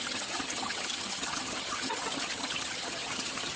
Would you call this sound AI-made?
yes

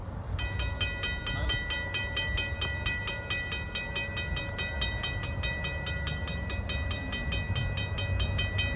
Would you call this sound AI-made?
no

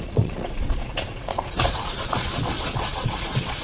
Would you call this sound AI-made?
yes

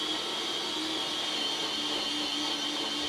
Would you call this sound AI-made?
no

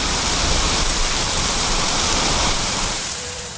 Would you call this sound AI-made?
yes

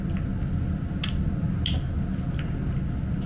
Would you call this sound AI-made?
no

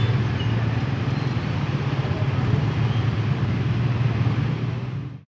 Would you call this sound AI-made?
no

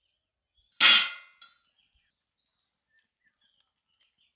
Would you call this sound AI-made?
no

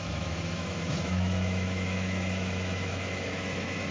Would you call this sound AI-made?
yes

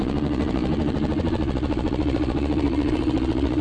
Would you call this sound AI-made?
yes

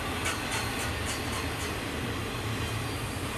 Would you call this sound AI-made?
no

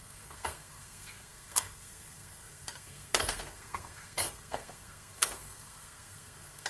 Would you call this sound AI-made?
yes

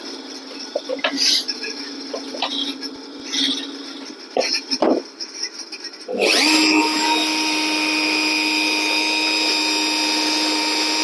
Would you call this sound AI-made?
no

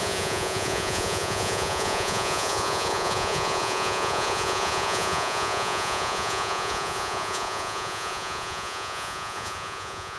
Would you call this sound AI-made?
yes